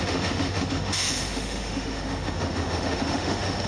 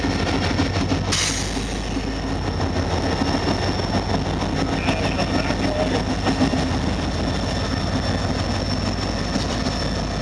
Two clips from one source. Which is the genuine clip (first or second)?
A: second